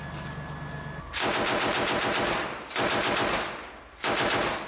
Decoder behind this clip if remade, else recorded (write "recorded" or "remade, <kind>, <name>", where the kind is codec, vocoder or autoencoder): recorded